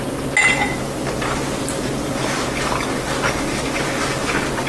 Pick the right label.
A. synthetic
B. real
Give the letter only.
B